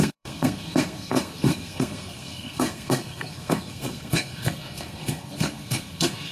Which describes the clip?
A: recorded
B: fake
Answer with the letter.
B